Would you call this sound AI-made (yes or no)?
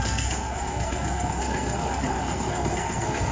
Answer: yes